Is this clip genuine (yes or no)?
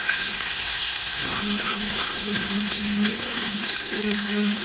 no